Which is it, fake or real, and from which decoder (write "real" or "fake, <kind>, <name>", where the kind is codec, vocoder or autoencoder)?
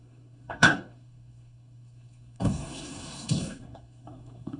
fake, codec, SNAC